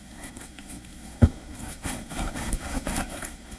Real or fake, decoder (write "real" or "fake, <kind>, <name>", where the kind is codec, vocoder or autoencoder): fake, codec, SNAC